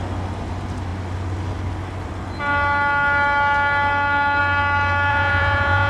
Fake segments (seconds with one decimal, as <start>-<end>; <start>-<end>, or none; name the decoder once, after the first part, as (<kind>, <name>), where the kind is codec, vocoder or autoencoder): 5.1-5.9 (vocoder, Vocos)